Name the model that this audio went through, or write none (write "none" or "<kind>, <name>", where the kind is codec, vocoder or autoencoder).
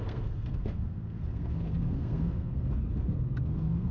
codec, SNAC